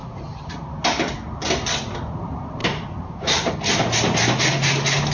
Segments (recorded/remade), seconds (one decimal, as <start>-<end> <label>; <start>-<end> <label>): 0.0-2.6 recorded; 2.6-3.5 remade; 3.5-5.1 recorded